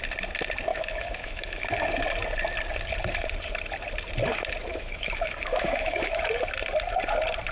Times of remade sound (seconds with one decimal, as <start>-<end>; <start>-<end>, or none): 0.7-1.9; 4.7-6.2

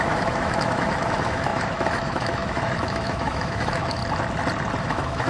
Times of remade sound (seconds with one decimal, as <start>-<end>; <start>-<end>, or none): 0.0-4.0; 4.8-5.3

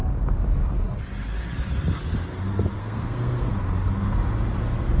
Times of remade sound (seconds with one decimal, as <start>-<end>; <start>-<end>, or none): 2.8-3.5

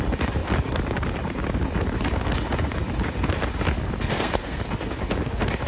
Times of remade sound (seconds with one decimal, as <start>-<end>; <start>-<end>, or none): 4.1-4.6

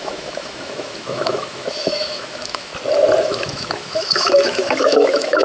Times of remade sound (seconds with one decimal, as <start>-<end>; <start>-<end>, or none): 0.0-2.7; 3.2-5.4

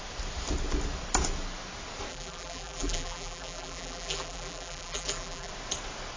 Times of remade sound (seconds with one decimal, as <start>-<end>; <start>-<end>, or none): 2.1-5.5

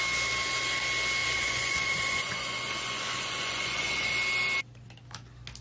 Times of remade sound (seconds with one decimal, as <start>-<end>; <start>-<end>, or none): 1.2-4.1

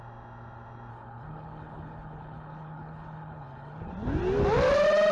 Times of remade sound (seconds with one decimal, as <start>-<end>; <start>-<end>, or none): 0.9-3.9